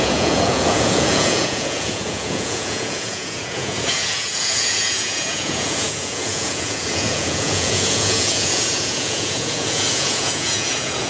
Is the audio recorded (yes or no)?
no